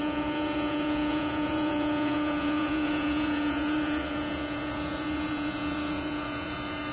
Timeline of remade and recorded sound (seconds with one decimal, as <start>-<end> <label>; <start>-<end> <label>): 0.0-6.9 remade